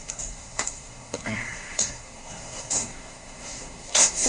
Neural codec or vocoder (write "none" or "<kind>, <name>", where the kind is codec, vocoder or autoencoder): codec, SNAC